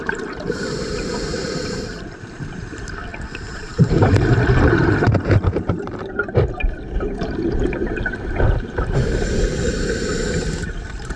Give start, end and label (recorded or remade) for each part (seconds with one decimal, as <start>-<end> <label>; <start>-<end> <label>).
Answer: 0.0-11.2 remade